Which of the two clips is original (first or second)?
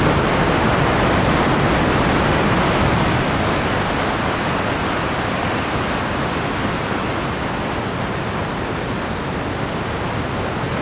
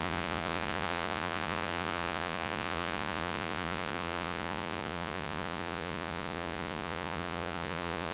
first